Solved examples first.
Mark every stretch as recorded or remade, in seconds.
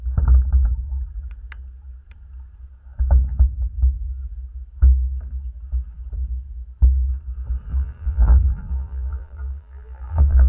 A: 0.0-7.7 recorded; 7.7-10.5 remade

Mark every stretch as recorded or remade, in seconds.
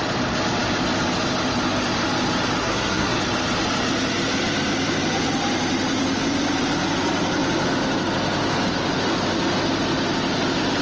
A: 0.0-2.6 recorded; 2.6-3.2 remade; 3.2-10.8 recorded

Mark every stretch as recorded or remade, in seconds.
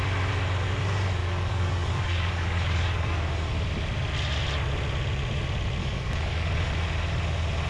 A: 0.0-1.2 recorded; 1.2-3.5 remade; 3.5-5.8 recorded; 5.8-6.7 remade; 6.7-7.7 recorded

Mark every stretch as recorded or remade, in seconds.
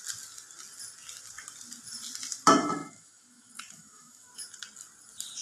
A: 0.0-2.8 recorded; 2.8-4.3 remade; 4.3-5.4 recorded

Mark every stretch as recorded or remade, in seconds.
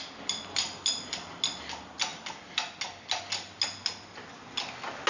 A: 0.0-5.1 recorded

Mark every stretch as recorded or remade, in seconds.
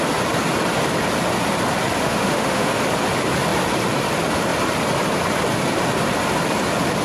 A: 0.0-2.0 recorded; 2.0-2.8 remade; 2.8-7.0 recorded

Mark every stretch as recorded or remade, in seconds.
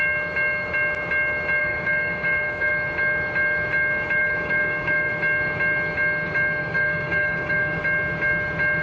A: 0.0-1.6 recorded; 1.6-2.7 remade; 2.7-4.2 recorded; 4.2-5.1 remade; 5.1-6.6 recorded; 6.6-7.8 remade; 7.8-8.8 recorded